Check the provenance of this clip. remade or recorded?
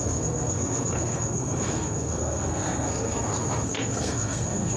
remade